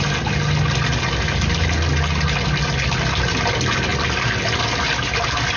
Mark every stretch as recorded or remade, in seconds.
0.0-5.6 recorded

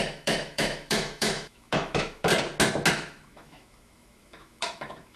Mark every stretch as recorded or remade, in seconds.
0.0-2.3 remade; 2.3-2.9 recorded; 2.9-5.2 remade

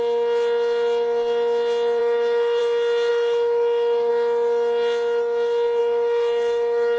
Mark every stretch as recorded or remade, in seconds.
0.0-2.0 recorded; 2.0-2.6 remade; 2.6-3.1 recorded; 3.1-4.1 remade; 4.1-5.8 recorded; 5.8-7.0 remade

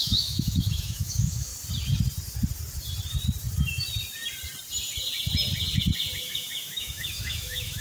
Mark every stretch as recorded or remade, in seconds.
0.0-1.5 remade; 1.5-6.2 recorded; 6.2-7.8 remade